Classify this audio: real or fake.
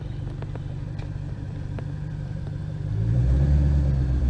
fake